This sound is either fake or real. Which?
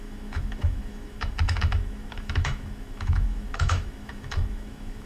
fake